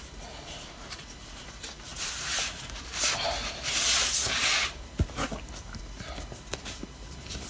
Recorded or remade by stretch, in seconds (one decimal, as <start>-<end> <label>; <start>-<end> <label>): 0.0-1.9 recorded; 1.9-5.8 remade; 5.8-7.5 recorded